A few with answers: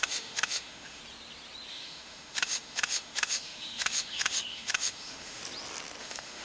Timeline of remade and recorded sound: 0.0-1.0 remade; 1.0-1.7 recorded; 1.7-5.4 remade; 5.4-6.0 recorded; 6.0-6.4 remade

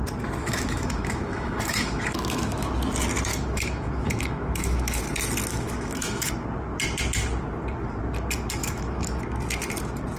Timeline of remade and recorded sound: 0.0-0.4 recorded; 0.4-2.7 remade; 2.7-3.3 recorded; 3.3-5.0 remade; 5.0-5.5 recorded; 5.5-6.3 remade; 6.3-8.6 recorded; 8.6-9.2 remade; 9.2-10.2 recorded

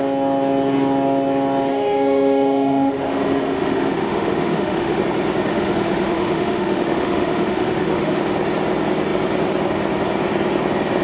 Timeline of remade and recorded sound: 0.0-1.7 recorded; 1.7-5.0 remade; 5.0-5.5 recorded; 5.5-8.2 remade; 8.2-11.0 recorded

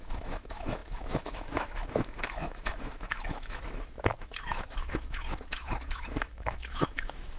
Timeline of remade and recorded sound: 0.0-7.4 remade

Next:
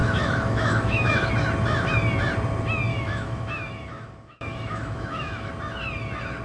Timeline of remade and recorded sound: 0.0-1.3 remade; 1.3-2.9 recorded; 2.9-5.5 remade; 5.5-6.4 recorded

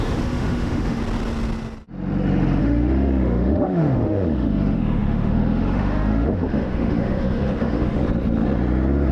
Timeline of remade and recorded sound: 0.0-1.0 remade; 1.0-2.6 recorded; 2.6-8.0 remade; 8.0-9.1 recorded

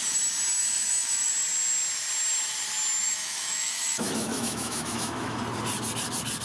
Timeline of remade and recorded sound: 0.0-0.6 recorded; 0.6-1.3 remade; 1.3-3.0 recorded; 3.0-5.4 remade; 5.4-6.4 recorded